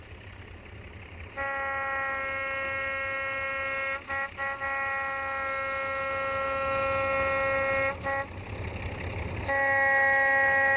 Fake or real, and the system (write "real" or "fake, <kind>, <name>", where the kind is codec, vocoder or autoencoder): real